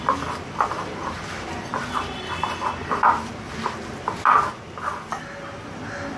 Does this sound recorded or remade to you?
recorded